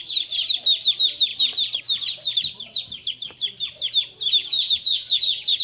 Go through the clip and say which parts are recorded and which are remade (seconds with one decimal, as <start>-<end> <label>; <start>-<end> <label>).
0.0-4.4 recorded; 4.4-5.6 remade